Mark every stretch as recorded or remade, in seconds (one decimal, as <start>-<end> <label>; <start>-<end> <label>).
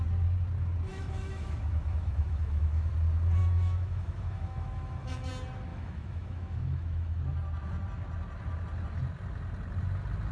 0.0-0.9 recorded; 0.9-2.9 remade; 2.9-3.4 recorded; 3.4-5.3 remade; 5.3-5.7 recorded; 5.7-7.2 remade; 7.2-10.3 recorded